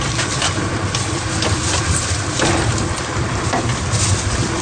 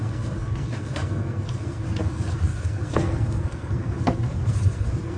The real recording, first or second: first